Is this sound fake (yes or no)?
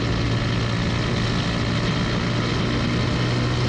no